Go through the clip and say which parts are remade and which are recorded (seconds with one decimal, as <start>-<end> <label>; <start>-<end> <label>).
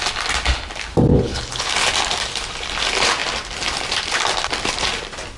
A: 0.0-1.1 recorded; 1.1-1.7 remade; 1.7-5.4 recorded